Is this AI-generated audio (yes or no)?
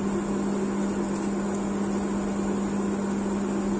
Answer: no